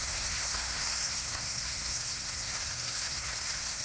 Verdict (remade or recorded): remade